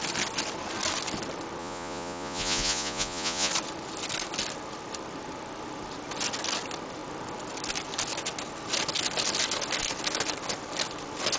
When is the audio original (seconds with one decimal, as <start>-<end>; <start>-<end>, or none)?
0.0-1.6; 3.5-11.4